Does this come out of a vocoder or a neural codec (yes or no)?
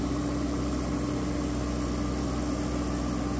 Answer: no